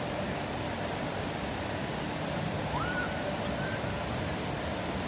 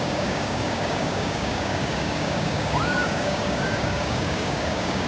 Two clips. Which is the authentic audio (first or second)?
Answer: first